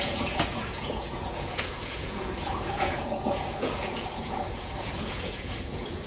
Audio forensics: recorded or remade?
remade